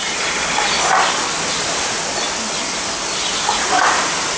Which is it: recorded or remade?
recorded